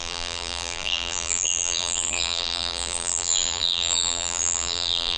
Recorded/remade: remade